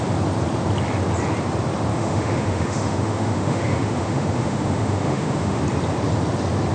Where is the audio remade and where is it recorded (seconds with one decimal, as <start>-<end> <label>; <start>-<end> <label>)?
0.0-1.9 recorded; 1.9-5.6 remade; 5.6-6.7 recorded